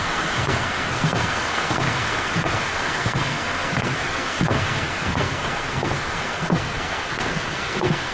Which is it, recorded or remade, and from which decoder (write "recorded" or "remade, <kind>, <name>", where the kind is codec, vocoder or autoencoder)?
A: remade, codec, SNAC